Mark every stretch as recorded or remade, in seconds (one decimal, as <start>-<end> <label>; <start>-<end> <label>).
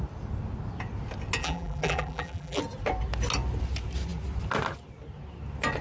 0.0-1.4 recorded; 1.4-2.6 remade; 2.6-5.8 recorded